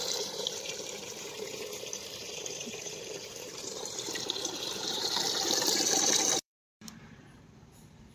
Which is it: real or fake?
fake